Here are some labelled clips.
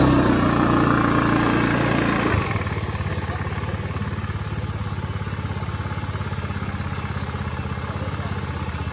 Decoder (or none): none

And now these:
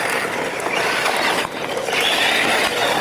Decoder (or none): none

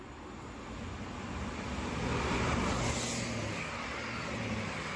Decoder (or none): none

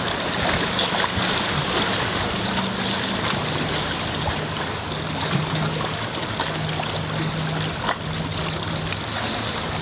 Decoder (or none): none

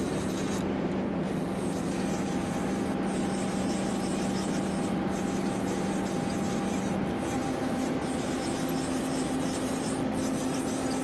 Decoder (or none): none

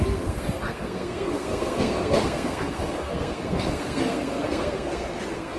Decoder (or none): codec, SNAC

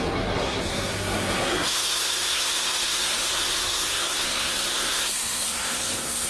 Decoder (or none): codec, SNAC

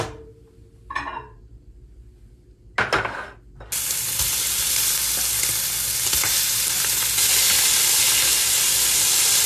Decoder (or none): none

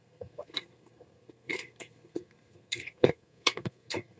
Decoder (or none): codec, SNAC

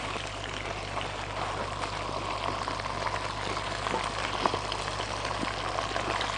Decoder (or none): none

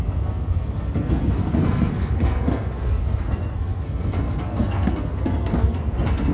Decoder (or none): codec, SNAC